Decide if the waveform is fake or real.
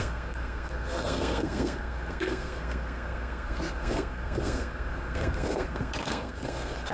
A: fake